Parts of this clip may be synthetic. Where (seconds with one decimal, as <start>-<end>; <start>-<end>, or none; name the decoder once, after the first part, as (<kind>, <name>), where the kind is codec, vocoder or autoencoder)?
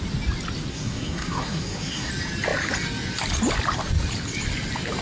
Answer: 0.7-2.1 (codec, SNAC)